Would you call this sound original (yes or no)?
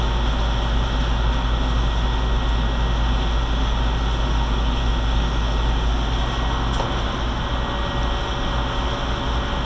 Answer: yes